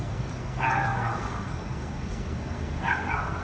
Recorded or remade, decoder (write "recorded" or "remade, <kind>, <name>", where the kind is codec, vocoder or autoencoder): remade, codec, SNAC